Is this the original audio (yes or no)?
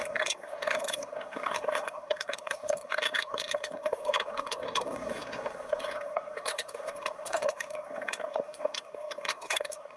no